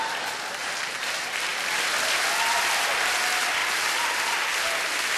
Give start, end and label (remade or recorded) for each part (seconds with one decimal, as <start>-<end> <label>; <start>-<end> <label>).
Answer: 0.0-0.6 recorded; 0.6-1.1 remade; 1.1-5.2 recorded